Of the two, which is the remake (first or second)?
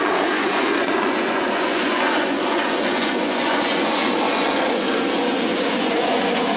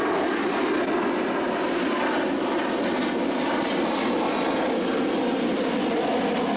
first